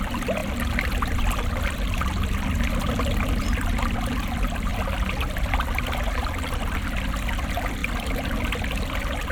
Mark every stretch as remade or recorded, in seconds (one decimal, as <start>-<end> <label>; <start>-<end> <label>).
0.0-9.3 recorded